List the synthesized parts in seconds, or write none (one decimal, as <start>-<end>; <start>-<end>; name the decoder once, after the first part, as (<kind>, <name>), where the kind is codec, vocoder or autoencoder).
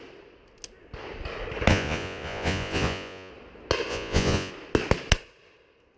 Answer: 1.7-3.3 (vocoder, Vocos); 3.9-4.5